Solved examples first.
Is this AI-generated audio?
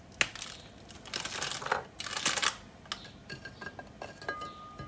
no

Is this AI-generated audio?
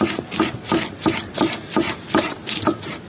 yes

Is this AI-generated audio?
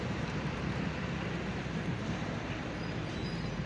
yes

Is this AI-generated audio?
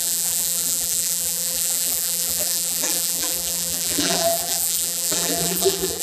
yes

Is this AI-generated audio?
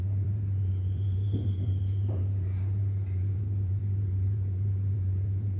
yes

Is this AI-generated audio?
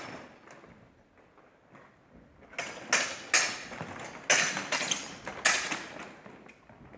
no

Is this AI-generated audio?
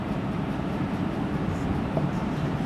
yes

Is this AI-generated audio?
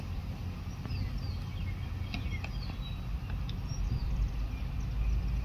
no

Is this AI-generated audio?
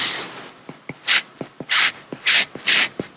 no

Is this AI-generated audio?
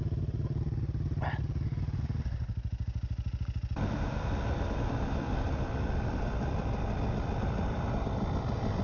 no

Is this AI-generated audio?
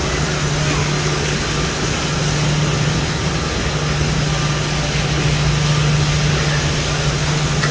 no